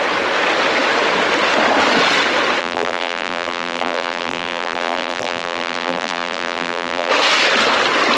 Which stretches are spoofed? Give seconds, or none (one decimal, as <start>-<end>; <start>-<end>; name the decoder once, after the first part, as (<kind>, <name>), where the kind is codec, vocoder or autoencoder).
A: 2.6-7.1 (vocoder, BigVGAN v2)